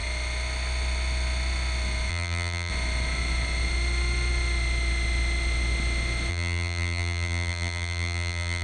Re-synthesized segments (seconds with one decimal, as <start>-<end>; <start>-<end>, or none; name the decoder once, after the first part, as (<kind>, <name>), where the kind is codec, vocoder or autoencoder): 2.1-2.7 (vocoder, BigVGAN v2); 6.3-8.6